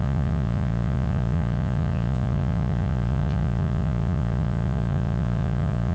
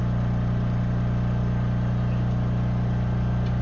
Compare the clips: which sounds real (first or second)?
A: second